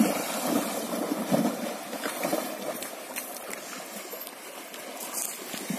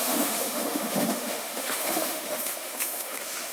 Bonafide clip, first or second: first